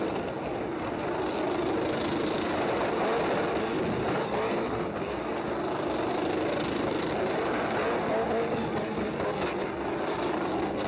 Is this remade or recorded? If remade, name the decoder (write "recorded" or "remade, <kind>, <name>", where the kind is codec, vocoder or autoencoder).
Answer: recorded